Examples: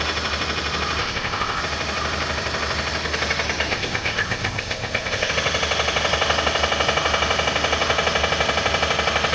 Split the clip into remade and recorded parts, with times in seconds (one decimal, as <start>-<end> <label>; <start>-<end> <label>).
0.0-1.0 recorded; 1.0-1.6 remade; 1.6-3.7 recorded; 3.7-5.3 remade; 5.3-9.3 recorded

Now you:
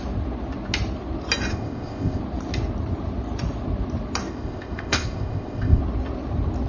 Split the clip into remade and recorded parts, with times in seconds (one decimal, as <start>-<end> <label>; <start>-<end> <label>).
0.0-1.5 recorded; 1.5-2.2 remade; 2.2-4.3 recorded; 4.3-5.8 remade; 5.8-6.7 recorded

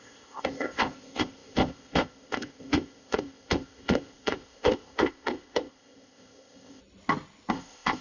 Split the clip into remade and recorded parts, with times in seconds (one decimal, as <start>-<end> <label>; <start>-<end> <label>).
0.0-6.8 remade; 6.8-7.5 recorded; 7.5-8.0 remade

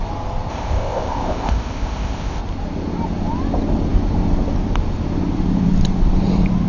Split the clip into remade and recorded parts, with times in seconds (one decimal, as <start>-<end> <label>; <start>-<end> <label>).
0.0-0.5 recorded; 0.5-2.4 remade; 2.4-6.7 recorded